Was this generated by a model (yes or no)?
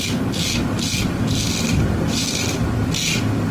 no